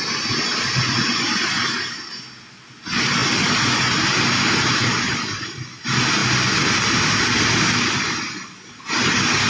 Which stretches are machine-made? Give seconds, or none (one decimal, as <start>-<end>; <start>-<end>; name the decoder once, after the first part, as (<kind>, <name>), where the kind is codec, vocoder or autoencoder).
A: none